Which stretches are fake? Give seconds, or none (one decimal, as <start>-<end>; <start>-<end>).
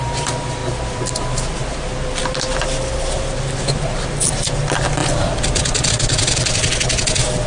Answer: 0.6-1.6; 5.0-5.9